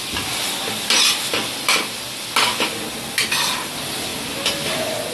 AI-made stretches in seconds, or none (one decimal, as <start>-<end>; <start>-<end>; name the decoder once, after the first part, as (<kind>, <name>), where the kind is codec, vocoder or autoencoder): none